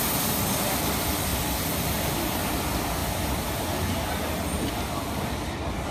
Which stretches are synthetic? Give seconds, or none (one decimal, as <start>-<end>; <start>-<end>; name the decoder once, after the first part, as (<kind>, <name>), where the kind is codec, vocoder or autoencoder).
none